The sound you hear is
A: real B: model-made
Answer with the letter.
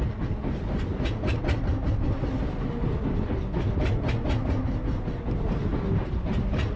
A